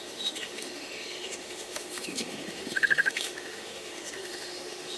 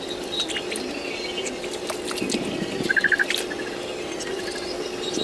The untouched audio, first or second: second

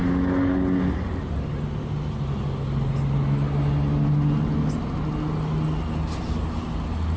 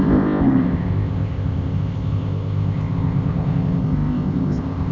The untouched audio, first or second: first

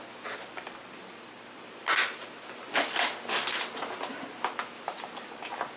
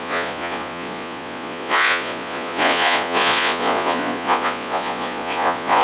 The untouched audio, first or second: first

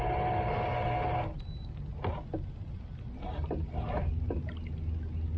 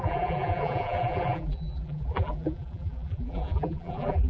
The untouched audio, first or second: first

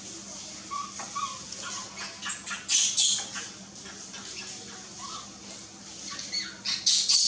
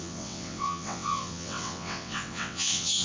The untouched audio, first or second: first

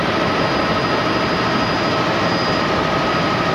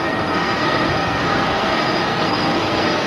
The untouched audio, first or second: first